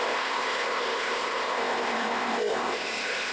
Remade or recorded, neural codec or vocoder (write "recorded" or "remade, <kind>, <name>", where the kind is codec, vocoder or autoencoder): remade, codec, ZipCodec